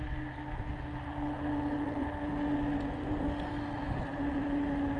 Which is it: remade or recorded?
recorded